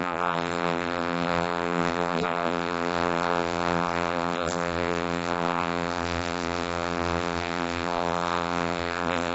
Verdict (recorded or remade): remade